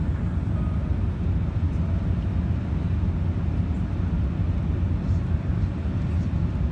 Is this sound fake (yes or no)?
no